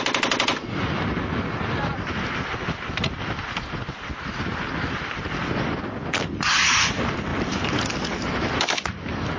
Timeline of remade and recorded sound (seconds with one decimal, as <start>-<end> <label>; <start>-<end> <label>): 0.0-9.4 recorded